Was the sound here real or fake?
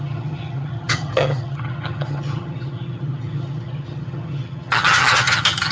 fake